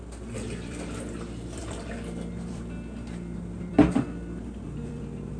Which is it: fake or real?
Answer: fake